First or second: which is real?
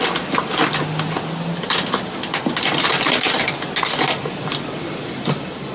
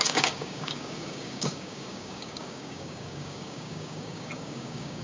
first